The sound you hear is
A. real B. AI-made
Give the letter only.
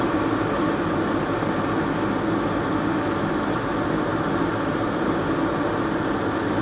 A